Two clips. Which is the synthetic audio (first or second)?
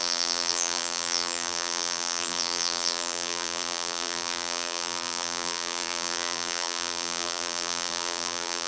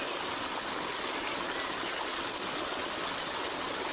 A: first